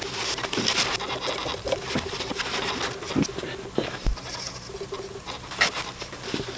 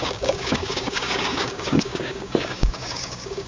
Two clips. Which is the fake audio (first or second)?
second